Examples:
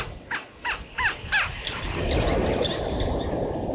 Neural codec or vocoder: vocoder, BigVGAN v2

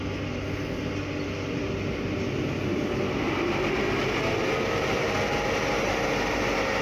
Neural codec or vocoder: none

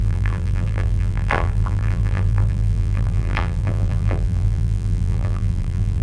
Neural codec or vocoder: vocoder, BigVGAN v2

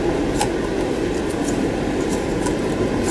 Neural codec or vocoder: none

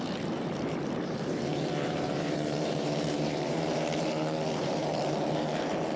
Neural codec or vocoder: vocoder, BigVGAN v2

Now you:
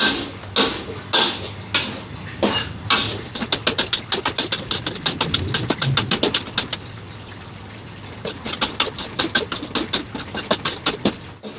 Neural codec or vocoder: none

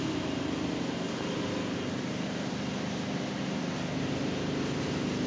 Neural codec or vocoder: none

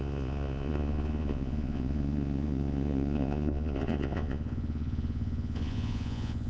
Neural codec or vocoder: vocoder, Vocos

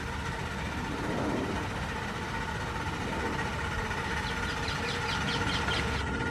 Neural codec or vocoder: none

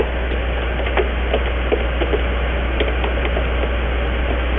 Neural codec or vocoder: none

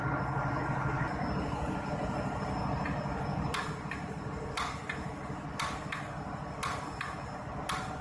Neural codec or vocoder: none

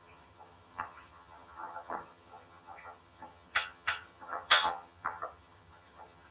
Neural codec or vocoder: vocoder, HiFi-GAN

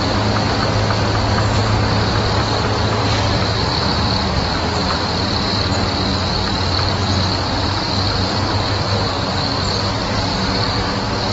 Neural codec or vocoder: none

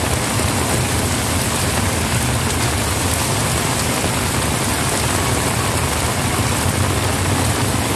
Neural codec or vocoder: none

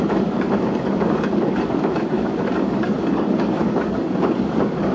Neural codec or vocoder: codec, DAC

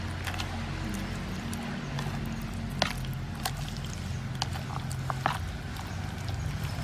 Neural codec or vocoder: none